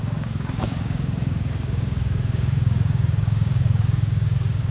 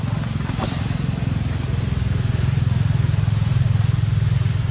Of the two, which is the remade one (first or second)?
first